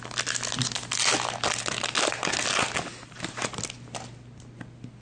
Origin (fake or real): real